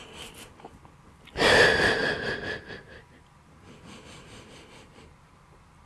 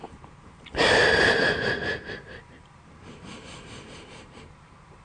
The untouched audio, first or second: first